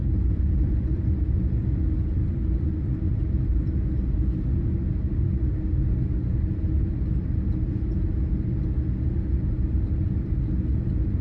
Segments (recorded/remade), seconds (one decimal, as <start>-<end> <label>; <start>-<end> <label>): 0.0-1.0 remade; 1.0-11.2 recorded